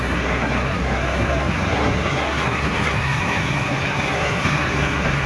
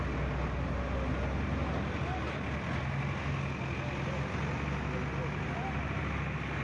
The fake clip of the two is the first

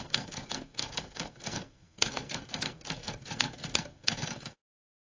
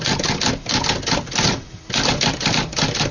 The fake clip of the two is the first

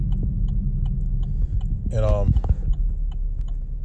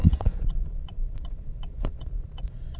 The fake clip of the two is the second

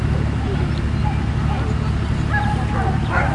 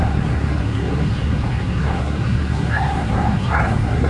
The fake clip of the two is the second